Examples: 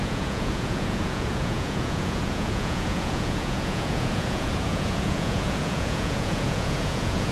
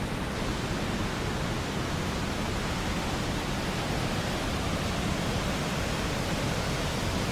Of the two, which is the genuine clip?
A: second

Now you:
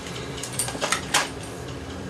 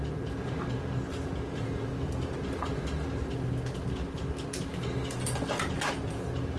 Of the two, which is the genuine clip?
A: second